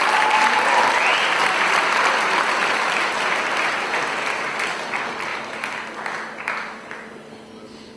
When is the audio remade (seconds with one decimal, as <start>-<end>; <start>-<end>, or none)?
none